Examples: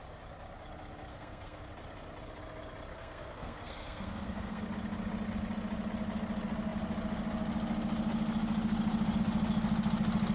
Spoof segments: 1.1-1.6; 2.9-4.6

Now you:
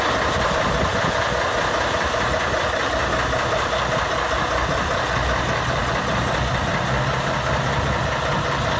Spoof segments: none

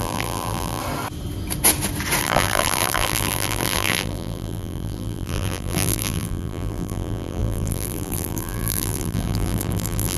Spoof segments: 0.0-0.8; 2.2-10.2

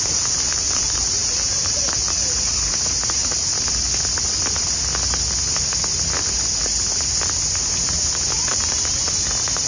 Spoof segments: 0.0-3.5; 7.4-9.7

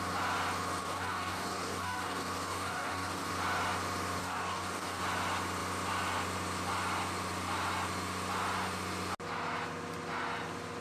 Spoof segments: 0.8-3.3; 4.2-5.0